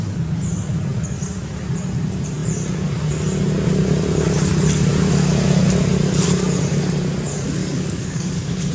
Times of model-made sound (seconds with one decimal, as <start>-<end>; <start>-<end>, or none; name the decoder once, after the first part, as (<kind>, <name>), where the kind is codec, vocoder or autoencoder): 7.6-8.7 (codec, DAC)